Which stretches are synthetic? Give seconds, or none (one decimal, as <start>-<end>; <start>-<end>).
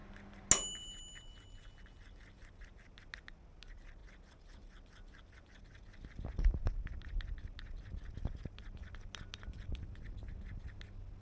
none